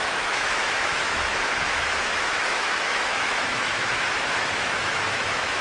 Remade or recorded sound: remade